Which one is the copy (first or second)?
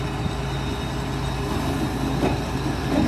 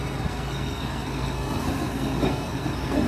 second